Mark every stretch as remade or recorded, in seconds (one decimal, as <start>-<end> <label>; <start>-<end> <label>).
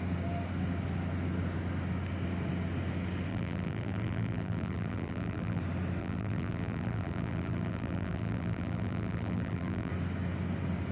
0.0-3.3 recorded; 3.3-5.6 remade; 5.6-6.0 recorded; 6.0-9.9 remade; 9.9-10.9 recorded